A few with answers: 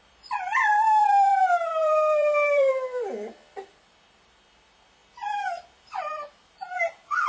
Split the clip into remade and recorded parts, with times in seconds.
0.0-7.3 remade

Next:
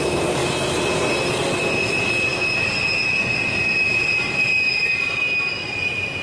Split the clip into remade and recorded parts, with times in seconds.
0.0-6.2 recorded

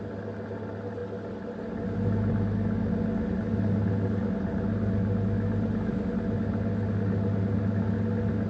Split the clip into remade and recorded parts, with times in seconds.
0.0-8.5 recorded